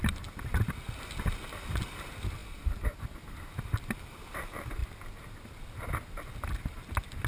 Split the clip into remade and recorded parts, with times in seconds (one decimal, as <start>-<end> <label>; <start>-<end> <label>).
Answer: 0.0-2.4 recorded; 2.4-4.2 remade; 4.2-7.3 recorded